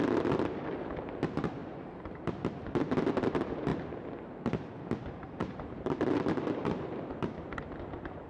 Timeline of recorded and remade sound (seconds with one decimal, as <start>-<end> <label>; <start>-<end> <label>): 0.0-1.6 recorded; 1.6-2.3 remade; 2.3-5.4 recorded; 5.4-8.3 remade